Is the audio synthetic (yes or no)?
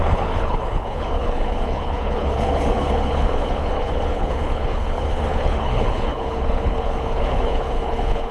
yes